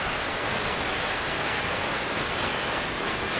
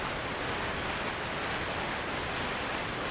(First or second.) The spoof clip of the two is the first